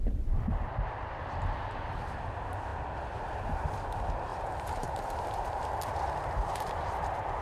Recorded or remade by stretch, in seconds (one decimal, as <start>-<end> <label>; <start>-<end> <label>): 0.0-4.3 recorded; 4.3-7.4 remade